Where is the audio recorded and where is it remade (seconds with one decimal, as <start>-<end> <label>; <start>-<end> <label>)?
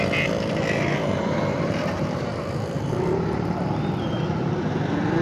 0.0-1.0 recorded; 1.0-4.1 remade; 4.1-5.2 recorded